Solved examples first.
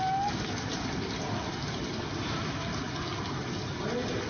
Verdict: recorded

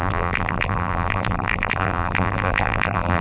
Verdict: remade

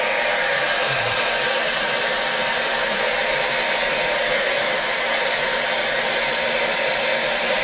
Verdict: recorded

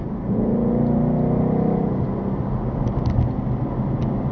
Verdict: recorded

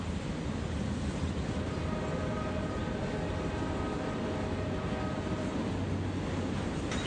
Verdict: recorded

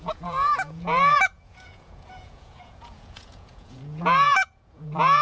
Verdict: remade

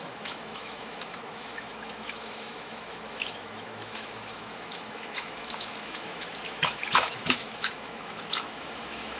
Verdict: remade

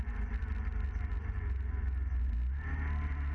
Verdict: recorded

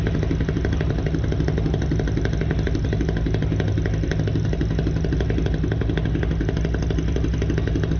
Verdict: recorded